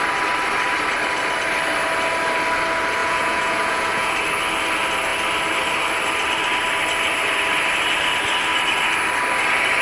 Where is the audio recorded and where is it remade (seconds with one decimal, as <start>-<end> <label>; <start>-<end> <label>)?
0.0-3.0 recorded; 3.0-4.1 remade; 4.1-9.8 recorded